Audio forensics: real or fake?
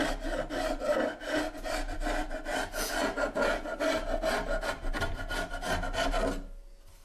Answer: real